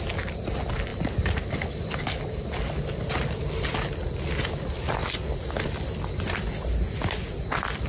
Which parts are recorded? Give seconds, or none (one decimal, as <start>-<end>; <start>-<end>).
0.0-7.9